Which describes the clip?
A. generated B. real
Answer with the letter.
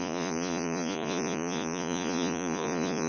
A